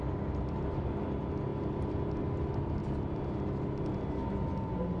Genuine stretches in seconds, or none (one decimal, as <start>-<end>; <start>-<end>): 0.0-5.0

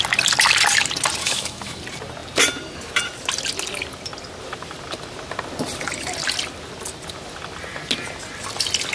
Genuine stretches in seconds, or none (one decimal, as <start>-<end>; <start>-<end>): 0.0-1.2; 1.8-8.9